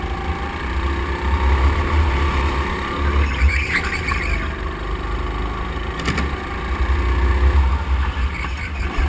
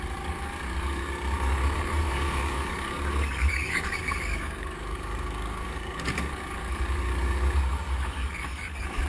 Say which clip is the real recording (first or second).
first